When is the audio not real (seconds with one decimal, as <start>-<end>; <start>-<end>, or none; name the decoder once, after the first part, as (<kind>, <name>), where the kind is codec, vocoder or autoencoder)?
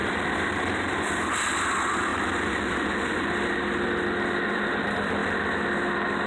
0.0-1.5 (vocoder, BigVGAN v2)